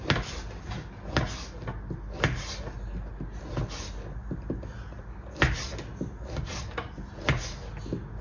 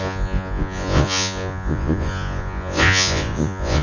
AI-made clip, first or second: second